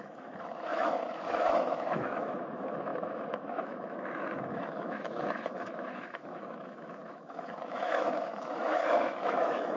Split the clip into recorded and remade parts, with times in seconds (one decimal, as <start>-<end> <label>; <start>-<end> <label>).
0.0-9.8 remade